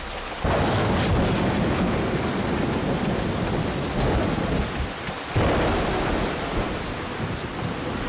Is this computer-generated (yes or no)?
no